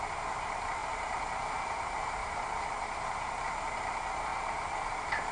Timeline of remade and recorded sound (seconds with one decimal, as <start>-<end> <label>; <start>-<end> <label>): 0.0-2.2 recorded; 2.2-3.3 remade; 3.3-4.3 recorded; 4.3-5.3 remade